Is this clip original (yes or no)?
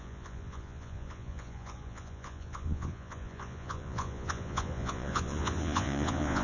no